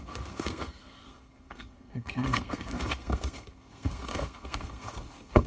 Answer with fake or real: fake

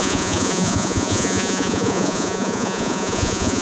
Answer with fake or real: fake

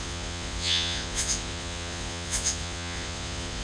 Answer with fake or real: fake